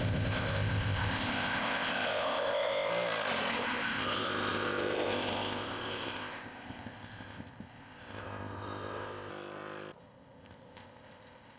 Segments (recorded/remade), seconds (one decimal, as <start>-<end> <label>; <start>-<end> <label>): 0.0-2.9 remade; 2.9-3.5 recorded; 3.5-9.3 remade; 9.3-10.0 recorded; 10.0-11.6 remade